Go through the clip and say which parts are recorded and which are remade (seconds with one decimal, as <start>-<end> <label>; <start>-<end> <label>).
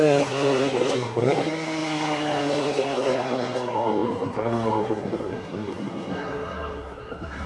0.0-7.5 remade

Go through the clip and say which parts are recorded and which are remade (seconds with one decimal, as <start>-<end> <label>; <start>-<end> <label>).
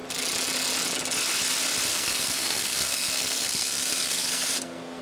0.0-1.9 recorded; 1.9-5.0 remade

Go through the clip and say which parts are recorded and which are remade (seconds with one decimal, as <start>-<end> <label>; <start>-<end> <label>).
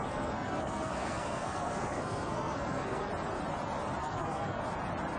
0.0-3.1 remade; 3.1-4.0 recorded; 4.0-4.6 remade; 4.6-5.2 recorded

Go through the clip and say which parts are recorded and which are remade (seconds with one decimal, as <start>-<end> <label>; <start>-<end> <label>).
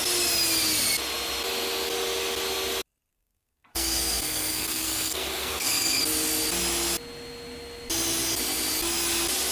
0.0-3.1 recorded; 3.1-6.0 remade; 6.0-9.5 recorded